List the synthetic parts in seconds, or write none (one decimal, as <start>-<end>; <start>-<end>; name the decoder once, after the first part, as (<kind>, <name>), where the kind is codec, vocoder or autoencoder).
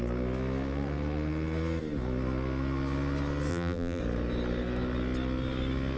3.5-4.0 (vocoder, BigVGAN v2)